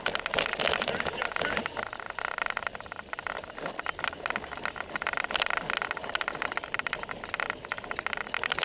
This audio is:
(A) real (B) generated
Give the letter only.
A